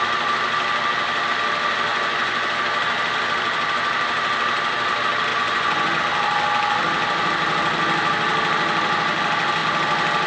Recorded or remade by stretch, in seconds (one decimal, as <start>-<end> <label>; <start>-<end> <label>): 0.0-1.9 recorded; 1.9-2.5 remade; 2.5-5.3 recorded; 5.3-6.0 remade; 6.0-10.3 recorded